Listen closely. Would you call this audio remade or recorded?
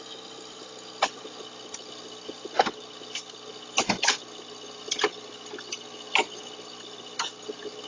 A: recorded